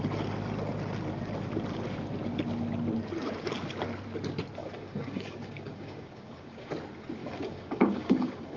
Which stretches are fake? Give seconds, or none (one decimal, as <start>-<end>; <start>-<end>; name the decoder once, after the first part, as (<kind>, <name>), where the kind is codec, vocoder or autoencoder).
4.6-6.7 (codec, DAC); 7.2-8.6